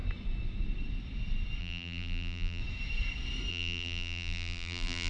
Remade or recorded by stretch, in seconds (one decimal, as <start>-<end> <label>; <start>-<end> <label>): 0.0-1.6 recorded; 1.6-2.6 remade; 2.6-3.5 recorded; 3.5-5.1 remade